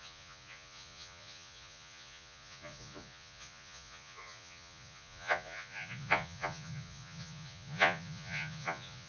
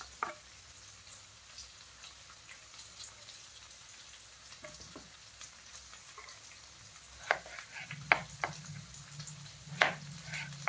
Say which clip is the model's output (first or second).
first